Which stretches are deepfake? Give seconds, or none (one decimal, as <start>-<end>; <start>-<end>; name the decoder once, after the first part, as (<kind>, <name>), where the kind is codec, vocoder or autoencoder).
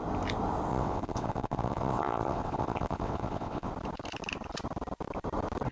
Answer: 0.7-3.7 (vocoder, WaveNeXt)